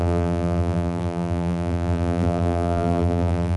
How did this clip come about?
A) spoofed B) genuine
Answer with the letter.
A